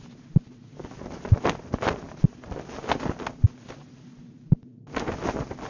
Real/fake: real